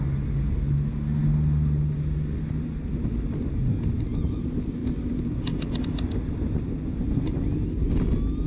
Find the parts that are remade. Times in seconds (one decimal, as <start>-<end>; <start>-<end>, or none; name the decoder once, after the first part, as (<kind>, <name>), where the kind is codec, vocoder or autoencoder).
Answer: none